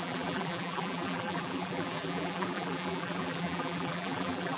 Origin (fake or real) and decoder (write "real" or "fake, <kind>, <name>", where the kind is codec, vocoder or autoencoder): fake, vocoder, BigVGAN v2